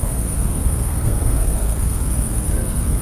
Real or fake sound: fake